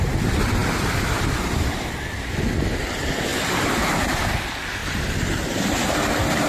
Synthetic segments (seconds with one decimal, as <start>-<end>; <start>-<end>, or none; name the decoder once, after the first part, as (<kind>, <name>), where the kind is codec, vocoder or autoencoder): 0.6-2.2 (vocoder, BigVGAN v2); 3.3-4.0; 4.8-5.6